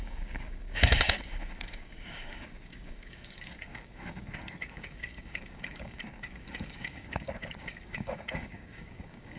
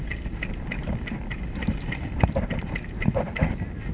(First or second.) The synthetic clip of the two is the first